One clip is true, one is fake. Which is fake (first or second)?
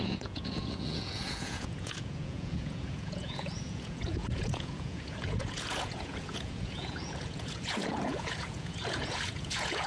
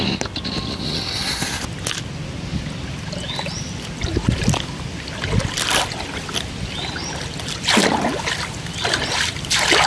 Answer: first